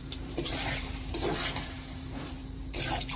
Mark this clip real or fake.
fake